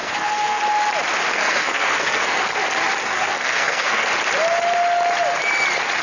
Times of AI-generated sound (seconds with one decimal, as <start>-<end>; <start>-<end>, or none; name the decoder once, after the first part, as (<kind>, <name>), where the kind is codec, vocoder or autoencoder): 0.0-0.6 (codec, SNAC); 1.3-2.4; 3.0-4.1